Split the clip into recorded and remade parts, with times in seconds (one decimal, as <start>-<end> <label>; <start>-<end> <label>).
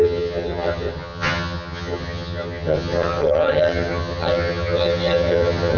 0.0-5.8 remade